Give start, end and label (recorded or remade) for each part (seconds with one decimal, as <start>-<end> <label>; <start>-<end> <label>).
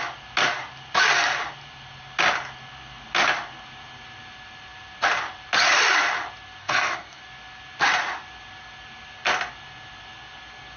0.0-6.6 recorded; 6.6-7.2 remade; 7.2-10.8 recorded